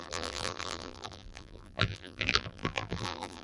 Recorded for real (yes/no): no